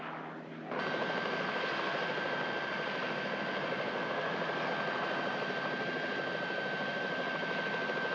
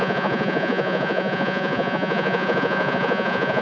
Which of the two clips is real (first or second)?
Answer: first